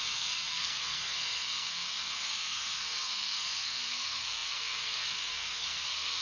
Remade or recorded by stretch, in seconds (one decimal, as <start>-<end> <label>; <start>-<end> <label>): 0.0-6.2 remade